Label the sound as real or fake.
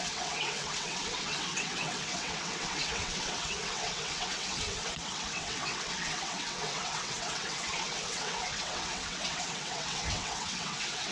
fake